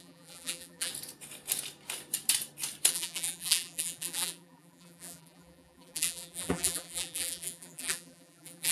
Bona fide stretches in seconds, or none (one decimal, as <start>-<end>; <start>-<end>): 0.9-2.9